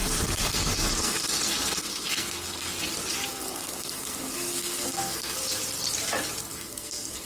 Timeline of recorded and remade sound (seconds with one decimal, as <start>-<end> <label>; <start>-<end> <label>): 0.0-2.8 remade; 2.8-3.3 recorded; 3.3-5.4 remade; 5.4-6.4 recorded; 6.4-7.3 remade